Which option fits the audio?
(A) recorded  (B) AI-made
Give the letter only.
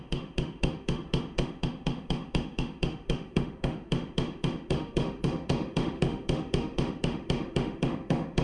B